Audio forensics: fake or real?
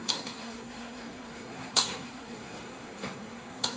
fake